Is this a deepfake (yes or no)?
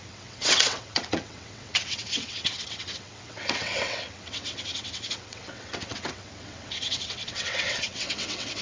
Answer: yes